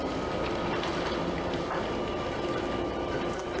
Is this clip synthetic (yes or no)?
no